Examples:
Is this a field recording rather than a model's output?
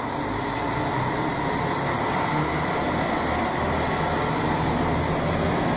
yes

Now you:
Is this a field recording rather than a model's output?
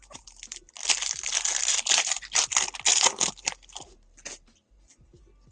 yes